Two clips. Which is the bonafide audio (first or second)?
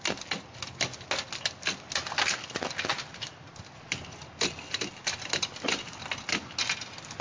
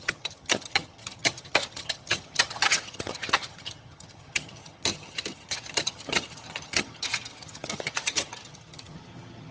first